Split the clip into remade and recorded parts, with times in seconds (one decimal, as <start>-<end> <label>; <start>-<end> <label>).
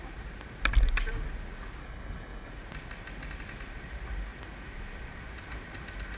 0.0-1.8 recorded; 1.8-2.5 remade; 2.5-6.2 recorded